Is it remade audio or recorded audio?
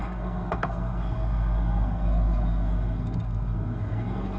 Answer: remade